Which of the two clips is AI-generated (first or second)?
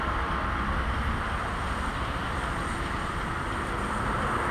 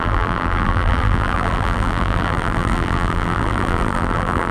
second